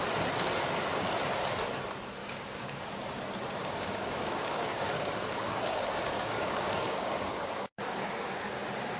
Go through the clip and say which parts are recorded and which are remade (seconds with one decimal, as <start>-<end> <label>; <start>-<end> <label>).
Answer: 0.0-2.2 recorded; 2.2-2.9 remade; 2.9-3.6 recorded; 3.6-8.6 remade; 8.6-9.0 recorded